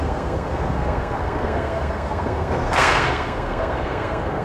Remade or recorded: remade